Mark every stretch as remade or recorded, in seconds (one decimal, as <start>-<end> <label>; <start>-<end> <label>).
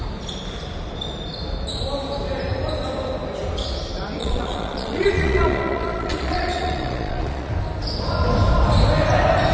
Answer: 0.0-4.2 recorded; 4.2-7.5 remade; 7.5-9.5 recorded